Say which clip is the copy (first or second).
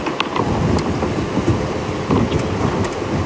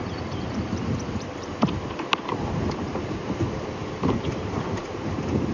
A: second